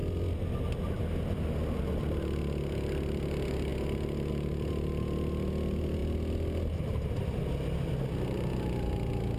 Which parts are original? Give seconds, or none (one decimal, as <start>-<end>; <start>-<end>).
0.0-9.4